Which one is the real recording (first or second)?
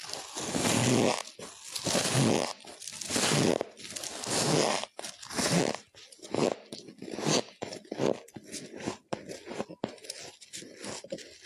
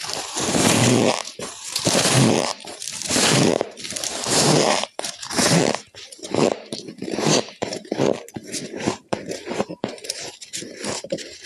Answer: first